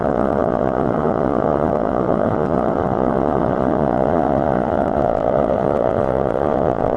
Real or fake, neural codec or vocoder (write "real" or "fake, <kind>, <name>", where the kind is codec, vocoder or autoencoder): fake, vocoder, Vocos